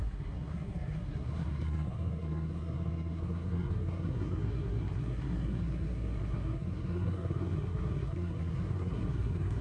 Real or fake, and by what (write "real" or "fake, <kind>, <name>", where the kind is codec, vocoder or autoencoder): fake, codec, SNAC